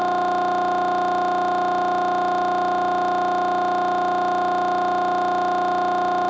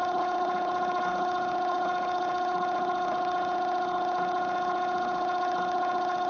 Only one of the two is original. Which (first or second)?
first